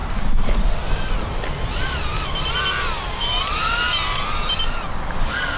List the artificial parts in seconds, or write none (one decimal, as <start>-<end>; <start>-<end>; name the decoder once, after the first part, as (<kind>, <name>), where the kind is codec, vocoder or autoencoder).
none